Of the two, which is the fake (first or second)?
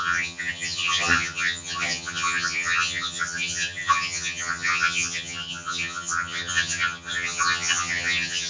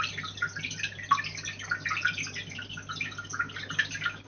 first